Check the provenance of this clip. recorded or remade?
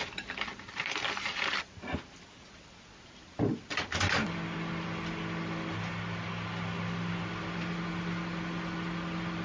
recorded